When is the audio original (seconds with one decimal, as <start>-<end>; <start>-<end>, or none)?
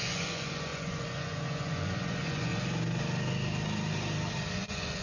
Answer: 2.5-4.5